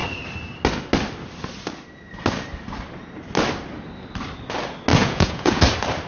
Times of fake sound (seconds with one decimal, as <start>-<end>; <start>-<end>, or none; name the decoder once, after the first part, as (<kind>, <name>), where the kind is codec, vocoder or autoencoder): 4.9-5.6 (vocoder, Vocos)